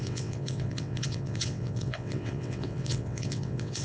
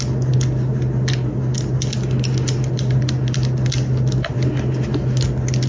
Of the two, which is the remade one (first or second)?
first